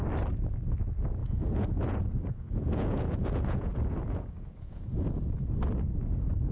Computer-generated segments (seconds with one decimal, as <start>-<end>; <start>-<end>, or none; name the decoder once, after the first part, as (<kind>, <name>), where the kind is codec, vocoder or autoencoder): 1.2-5.1 (vocoder, Vocos)